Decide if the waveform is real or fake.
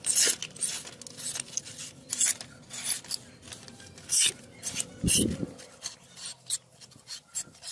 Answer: real